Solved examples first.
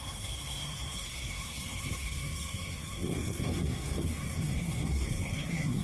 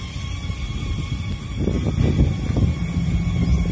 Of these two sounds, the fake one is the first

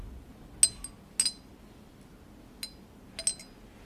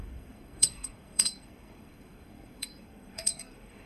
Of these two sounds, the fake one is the second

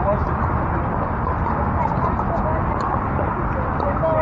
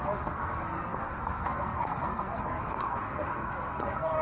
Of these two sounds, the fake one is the second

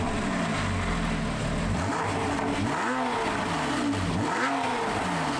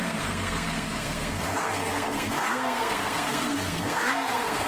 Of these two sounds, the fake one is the second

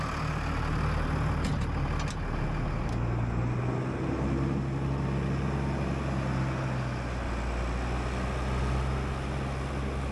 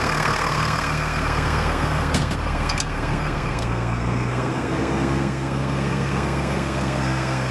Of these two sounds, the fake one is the second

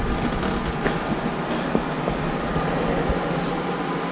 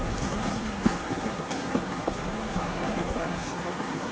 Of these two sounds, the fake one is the second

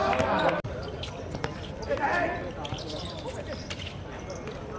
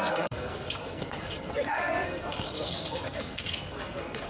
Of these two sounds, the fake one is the second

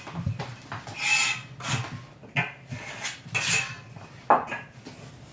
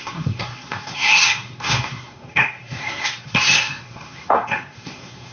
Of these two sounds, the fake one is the second